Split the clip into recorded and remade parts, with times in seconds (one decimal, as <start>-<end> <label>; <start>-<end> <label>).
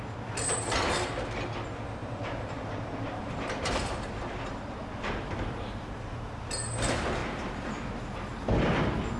0.0-2.0 recorded; 2.0-6.4 remade; 6.4-7.2 recorded; 7.2-7.9 remade; 7.9-9.2 recorded